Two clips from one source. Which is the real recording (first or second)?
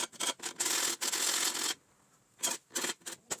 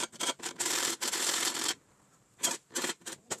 first